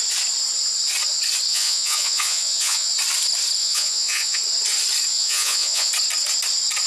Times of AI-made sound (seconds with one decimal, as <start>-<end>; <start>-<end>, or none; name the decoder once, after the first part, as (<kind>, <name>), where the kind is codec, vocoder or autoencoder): 1.5-2.9 (vocoder, Vocos); 3.6-4.4; 5.1-5.9